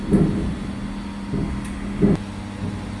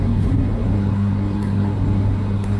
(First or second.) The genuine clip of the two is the first